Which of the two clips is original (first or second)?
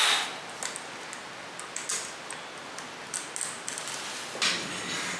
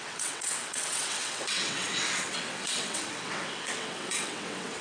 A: first